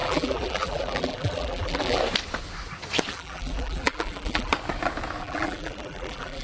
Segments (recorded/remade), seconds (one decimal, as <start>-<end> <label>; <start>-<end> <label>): 0.0-2.0 remade; 2.0-3.1 recorded; 3.1-4.5 remade; 4.5-5.2 recorded; 5.2-6.4 remade